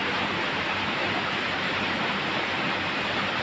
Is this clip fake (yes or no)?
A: yes